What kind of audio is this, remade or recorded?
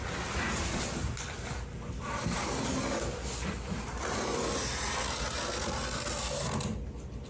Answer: recorded